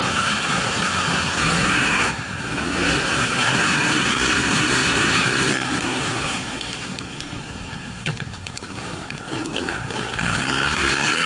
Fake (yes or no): yes